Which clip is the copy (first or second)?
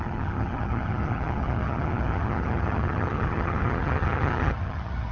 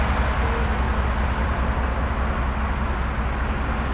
first